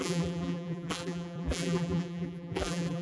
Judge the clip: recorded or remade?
remade